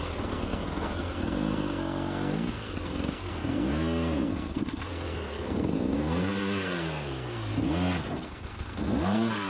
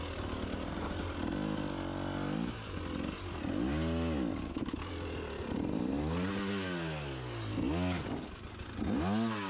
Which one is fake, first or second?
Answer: first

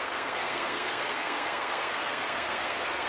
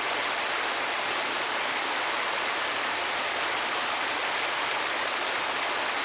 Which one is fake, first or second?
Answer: first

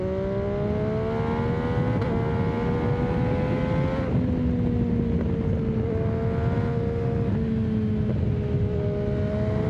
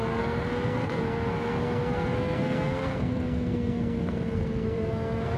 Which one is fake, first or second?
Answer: second